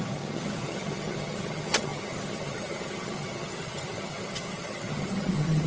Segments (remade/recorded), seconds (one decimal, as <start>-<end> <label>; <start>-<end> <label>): 0.0-5.7 remade